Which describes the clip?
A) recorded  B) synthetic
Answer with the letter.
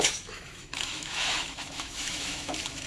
B